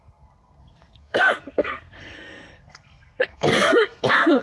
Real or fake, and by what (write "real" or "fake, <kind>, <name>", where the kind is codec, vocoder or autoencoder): fake, codec, SNAC